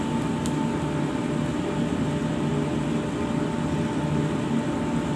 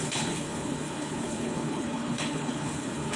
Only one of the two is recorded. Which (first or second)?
first